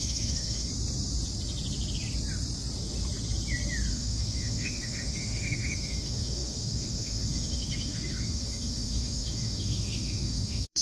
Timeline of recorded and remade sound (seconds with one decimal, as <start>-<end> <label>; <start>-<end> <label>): 0.0-0.7 remade; 0.7-3.9 recorded; 3.9-10.8 remade